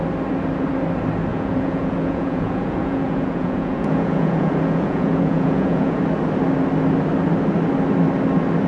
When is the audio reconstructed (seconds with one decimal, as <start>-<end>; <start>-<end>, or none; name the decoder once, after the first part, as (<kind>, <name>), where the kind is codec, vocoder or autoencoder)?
1.3-6.0 (vocoder, Vocos)